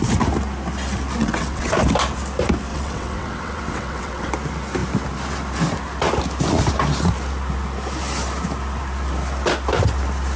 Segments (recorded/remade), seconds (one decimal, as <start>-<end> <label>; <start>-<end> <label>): 0.0-1.2 recorded; 1.2-1.7 remade; 1.7-2.7 recorded; 2.7-4.3 remade; 4.3-10.4 recorded